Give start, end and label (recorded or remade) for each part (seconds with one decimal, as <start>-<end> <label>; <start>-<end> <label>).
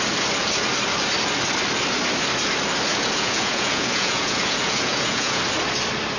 0.0-2.9 recorded; 2.9-5.4 remade; 5.4-6.2 recorded